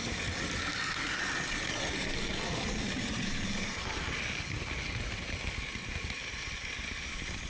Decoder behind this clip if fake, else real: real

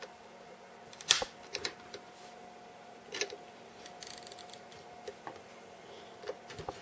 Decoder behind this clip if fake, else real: real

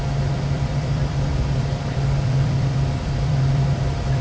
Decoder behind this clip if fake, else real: fake, vocoder, BigVGAN v2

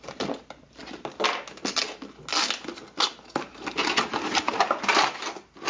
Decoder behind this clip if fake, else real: real